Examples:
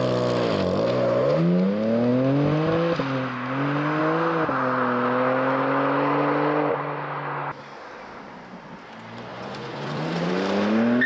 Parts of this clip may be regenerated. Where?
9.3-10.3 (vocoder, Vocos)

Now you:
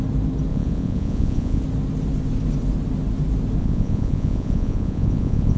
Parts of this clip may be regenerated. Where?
0.5-1.6 (vocoder, Vocos); 3.6-5.6

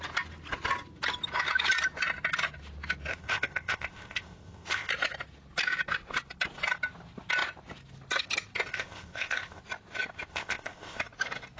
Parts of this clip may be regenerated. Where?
3.1-4.9 (codec, ZipCodec); 8.7-9.6; 10.3-11.0

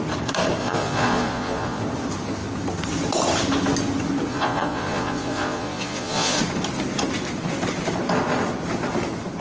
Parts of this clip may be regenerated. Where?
0.6-1.8 (vocoder, Vocos); 4.3-6.4

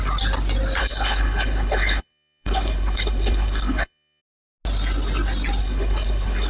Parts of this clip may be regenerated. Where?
0.8-4.2 (codec, HILCodec); 5.6-6.5

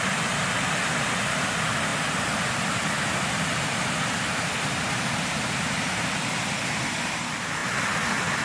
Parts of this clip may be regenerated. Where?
0.0-8.4 (vocoder, BigVGAN v2)

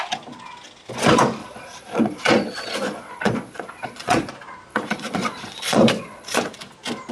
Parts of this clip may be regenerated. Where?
1.4-4.3 (vocoder, Vocos); 4.7-6.5